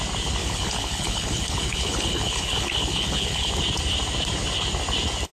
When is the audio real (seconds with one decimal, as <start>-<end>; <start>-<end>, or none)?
0.0-0.4; 3.5-5.4